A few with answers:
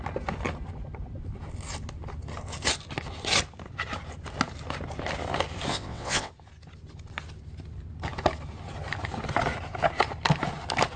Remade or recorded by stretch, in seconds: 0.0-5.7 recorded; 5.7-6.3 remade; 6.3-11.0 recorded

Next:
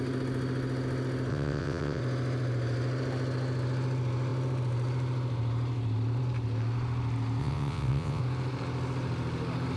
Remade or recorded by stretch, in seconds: 0.0-1.3 recorded; 1.3-2.0 remade; 2.0-7.4 recorded; 7.4-8.2 remade; 8.2-9.8 recorded

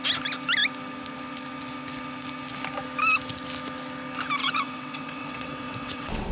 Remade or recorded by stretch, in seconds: 0.0-4.4 recorded; 4.4-6.3 remade

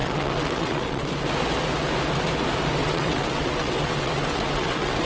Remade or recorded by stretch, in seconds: 0.0-1.1 remade; 1.1-2.8 recorded; 2.8-5.1 remade

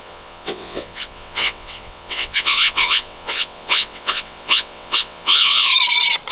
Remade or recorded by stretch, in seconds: 0.0-5.7 remade; 5.7-6.3 recorded

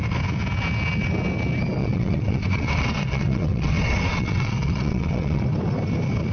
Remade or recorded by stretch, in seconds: 0.0-1.8 recorded; 1.8-5.4 remade; 5.4-6.3 recorded

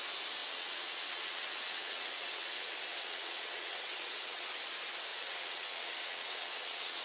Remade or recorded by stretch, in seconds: 0.0-0.4 recorded; 0.4-4.6 remade; 4.6-5.1 recorded; 5.1-7.0 remade